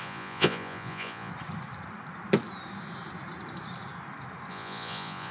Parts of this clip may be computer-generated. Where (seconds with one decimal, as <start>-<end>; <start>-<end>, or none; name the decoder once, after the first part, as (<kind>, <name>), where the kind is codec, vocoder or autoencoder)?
0.0-1.3 (vocoder, Vocos); 4.5-5.3